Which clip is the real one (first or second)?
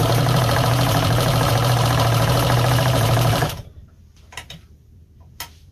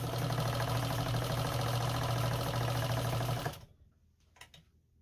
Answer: second